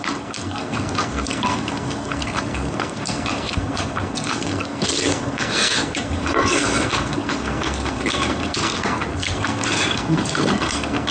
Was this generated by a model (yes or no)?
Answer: yes